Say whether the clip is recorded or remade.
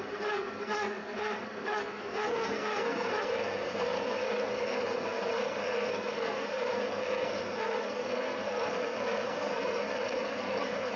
remade